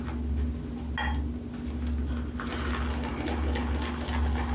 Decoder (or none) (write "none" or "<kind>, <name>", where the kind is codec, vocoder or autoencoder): none